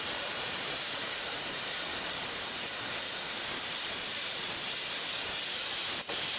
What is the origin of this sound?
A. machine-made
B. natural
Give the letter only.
A